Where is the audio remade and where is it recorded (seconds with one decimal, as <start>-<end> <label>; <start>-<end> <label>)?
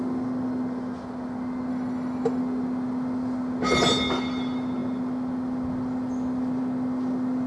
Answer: 0.0-1.7 recorded; 1.7-2.4 remade; 2.4-7.5 recorded